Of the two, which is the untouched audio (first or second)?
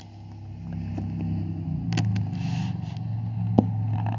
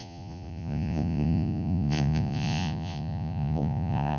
first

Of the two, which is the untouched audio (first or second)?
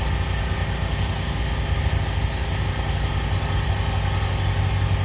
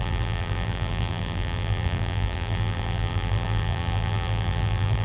first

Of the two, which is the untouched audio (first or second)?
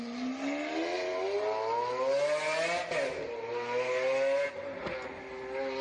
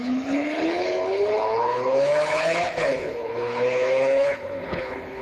first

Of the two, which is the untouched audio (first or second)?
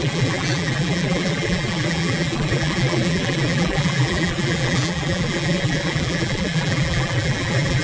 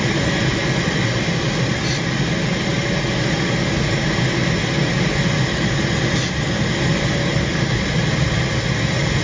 second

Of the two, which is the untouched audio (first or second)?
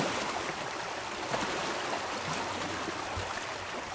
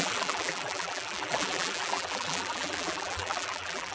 first